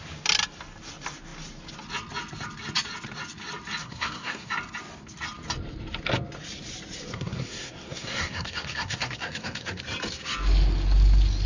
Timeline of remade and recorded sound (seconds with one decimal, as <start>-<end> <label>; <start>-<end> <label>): 0.0-3.8 recorded; 3.8-4.5 remade; 4.5-7.1 recorded; 7.1-9.8 remade; 9.8-11.5 recorded